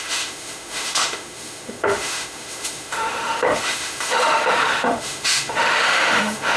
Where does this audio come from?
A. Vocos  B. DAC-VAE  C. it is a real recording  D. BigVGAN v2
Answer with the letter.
B